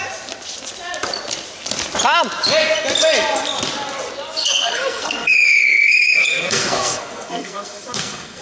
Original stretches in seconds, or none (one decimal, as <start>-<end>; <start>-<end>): 0.0-4.4